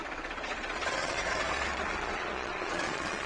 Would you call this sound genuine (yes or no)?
no